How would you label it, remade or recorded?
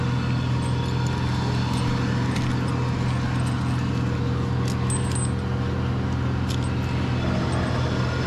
recorded